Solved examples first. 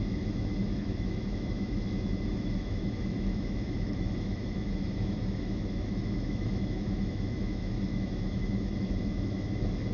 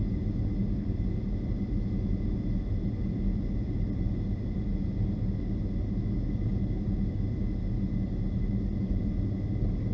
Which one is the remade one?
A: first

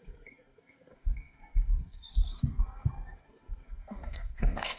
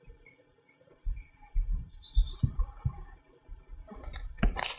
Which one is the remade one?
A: first